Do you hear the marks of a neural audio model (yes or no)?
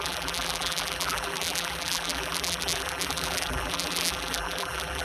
yes